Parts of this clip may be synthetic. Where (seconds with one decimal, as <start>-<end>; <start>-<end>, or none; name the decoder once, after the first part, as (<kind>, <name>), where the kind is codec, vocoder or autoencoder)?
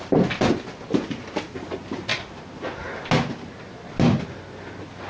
none